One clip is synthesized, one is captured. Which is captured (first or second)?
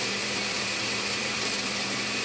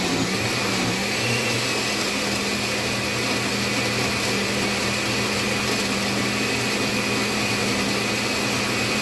second